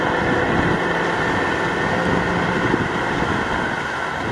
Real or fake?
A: real